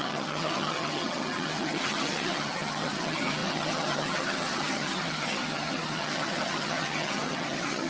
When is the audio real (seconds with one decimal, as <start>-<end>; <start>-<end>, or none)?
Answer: none